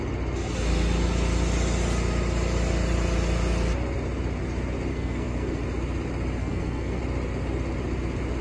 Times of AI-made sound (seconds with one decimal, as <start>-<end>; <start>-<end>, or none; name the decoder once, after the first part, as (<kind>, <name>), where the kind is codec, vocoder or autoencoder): 4.9-5.6 (codec, SNAC); 6.4-7.0